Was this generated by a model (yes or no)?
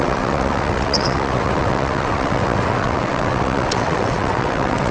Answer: yes